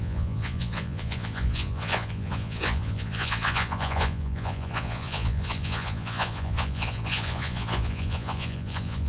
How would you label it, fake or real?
fake